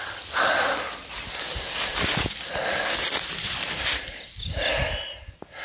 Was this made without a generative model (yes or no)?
yes